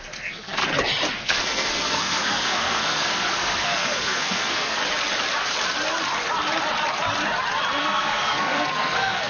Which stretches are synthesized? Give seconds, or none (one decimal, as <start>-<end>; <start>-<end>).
0.0-0.6; 1.1-4.8; 7.8-9.3